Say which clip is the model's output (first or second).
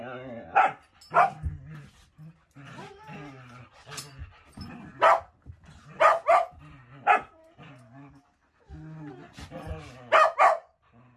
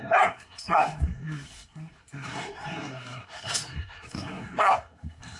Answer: second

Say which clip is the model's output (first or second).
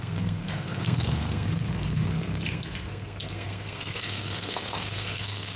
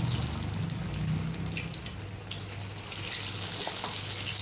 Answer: first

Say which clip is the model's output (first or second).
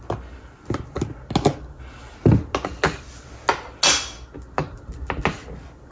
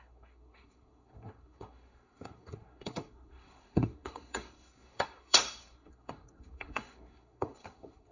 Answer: second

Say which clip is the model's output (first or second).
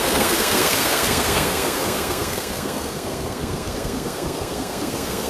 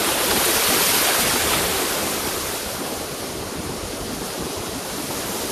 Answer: first